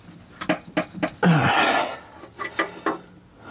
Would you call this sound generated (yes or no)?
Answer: no